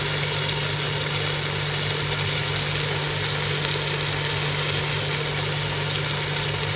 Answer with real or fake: real